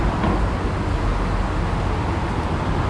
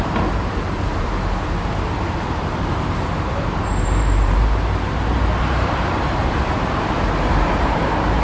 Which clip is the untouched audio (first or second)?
first